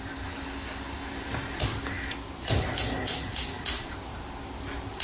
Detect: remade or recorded recorded